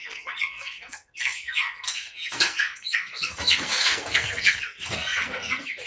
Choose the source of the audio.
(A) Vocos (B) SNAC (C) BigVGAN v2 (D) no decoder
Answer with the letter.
B